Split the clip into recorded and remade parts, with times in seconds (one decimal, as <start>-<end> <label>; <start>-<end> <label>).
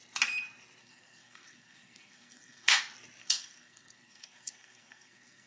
0.0-0.8 recorded; 0.8-2.8 remade; 2.8-3.2 recorded; 3.2-5.5 remade